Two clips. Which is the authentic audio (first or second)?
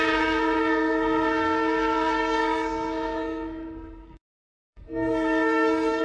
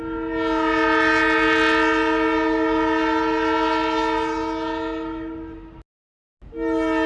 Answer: second